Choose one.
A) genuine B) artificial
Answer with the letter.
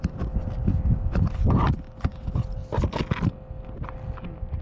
A